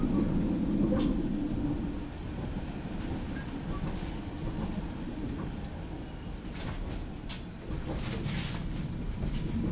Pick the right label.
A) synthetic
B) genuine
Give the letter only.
B